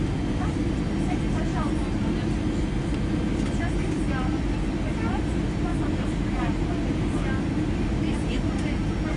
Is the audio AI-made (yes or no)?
no